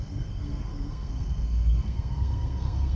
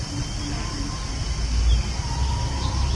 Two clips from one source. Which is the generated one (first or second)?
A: first